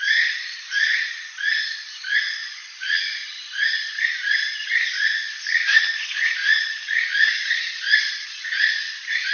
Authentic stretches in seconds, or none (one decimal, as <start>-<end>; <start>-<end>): 4.8-5.6